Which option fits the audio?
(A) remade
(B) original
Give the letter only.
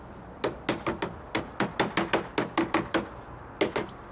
B